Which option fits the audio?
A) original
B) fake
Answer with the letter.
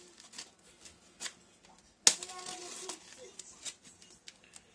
A